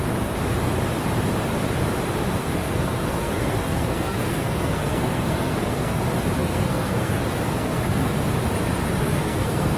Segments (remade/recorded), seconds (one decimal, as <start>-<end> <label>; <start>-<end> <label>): 0.0-2.4 recorded; 2.4-6.0 remade; 6.0-6.4 recorded; 6.4-8.2 remade; 8.2-9.0 recorded; 9.0-9.8 remade